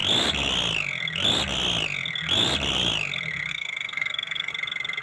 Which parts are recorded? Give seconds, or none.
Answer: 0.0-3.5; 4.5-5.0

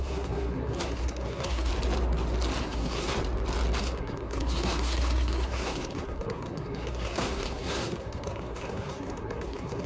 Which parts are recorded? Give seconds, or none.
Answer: 1.7-2.6; 3.2-3.8